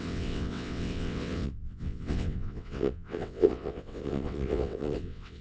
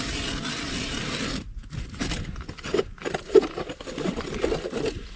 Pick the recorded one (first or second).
second